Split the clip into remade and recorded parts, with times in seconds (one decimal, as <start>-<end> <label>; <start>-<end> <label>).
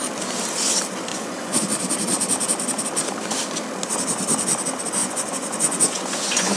0.0-1.1 recorded; 1.1-1.6 remade; 1.6-5.0 recorded; 5.0-6.6 remade